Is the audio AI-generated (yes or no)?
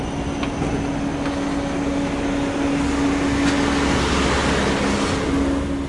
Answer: no